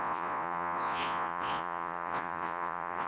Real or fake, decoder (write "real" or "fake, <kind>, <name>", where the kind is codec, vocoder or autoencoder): fake, vocoder, Vocos